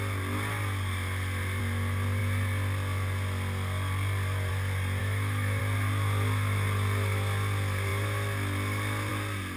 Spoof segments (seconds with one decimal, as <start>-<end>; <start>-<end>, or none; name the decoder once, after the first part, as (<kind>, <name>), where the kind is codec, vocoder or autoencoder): 5.0-5.6 (autoencoder, DAC-VAE)